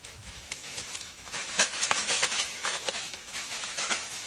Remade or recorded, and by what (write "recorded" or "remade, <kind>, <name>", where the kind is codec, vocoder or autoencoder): remade, autoencoder, DAC-VAE